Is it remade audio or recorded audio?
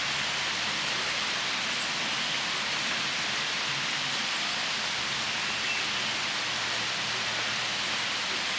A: recorded